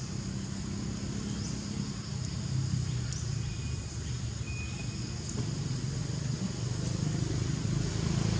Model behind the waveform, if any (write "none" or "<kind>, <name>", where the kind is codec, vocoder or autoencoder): none